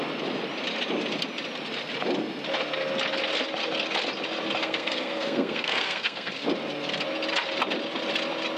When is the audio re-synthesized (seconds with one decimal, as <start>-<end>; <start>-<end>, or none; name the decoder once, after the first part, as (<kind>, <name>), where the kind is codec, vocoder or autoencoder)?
4.6-6.3 (codec, SNAC)